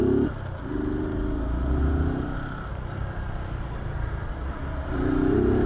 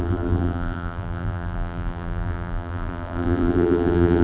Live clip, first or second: first